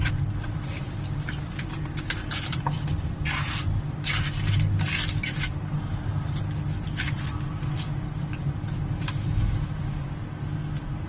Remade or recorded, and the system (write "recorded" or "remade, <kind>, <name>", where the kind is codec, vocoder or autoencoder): recorded